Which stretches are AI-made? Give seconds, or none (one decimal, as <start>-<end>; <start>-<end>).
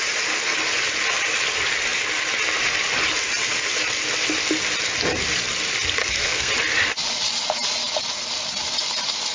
6.0-6.5